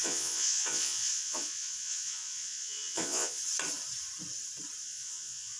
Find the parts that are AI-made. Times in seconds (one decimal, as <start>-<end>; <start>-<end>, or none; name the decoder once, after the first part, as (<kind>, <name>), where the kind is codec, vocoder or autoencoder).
0.0-3.4 (vocoder, Vocos); 4.8-5.6